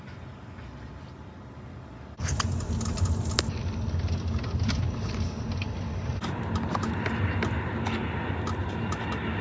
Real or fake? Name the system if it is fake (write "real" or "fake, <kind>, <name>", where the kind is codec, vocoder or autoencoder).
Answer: real